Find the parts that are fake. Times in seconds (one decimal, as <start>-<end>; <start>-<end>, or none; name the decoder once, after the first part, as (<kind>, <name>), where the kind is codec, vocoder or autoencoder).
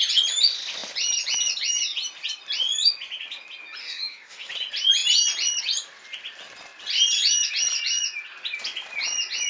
3.8-4.5 (autoencoder, DAC-VAE)